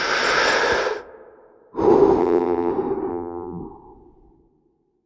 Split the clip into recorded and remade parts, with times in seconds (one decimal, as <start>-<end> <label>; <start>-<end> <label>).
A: 0.0-2.2 recorded; 2.2-2.7 remade; 2.7-3.1 recorded; 3.1-3.6 remade; 3.6-5.1 recorded